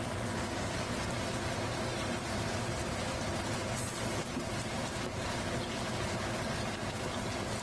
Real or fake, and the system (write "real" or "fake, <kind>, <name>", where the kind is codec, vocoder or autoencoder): real